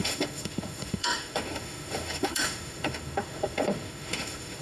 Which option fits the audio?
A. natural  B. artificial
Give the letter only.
B